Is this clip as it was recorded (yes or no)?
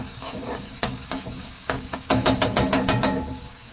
no